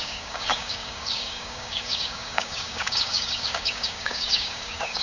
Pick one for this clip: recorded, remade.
remade